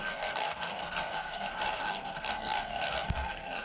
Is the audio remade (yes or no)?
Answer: yes